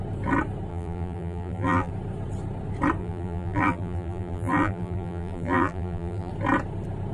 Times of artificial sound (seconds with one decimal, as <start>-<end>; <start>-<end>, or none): 0.7-1.9; 3.0-6.3